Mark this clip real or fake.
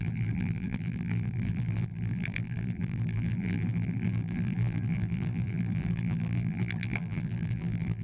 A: fake